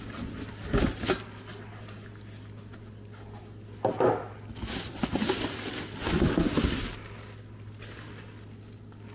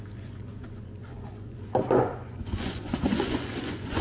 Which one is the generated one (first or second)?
second